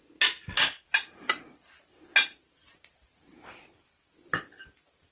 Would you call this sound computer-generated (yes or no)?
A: no